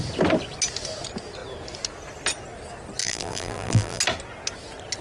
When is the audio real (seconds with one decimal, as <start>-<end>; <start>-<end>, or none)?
0.0-3.0; 4.0-5.0